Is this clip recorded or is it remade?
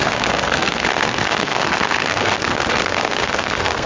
remade